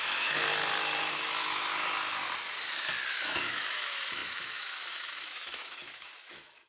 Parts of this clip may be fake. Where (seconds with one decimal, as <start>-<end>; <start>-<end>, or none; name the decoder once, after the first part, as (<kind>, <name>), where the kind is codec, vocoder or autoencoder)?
0.0-0.4 (autoencoder, DAC-VAE); 1.0-1.7; 3.1-6.7